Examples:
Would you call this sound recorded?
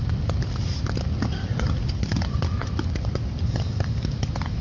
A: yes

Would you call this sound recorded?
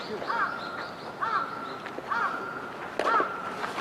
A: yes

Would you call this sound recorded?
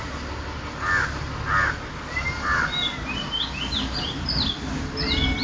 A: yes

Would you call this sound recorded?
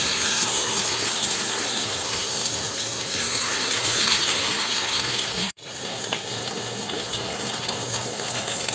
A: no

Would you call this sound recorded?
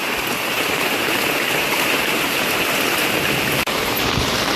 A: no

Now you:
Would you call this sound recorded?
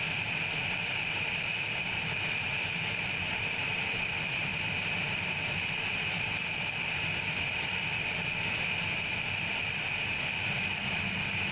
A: yes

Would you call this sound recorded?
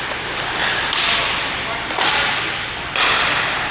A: yes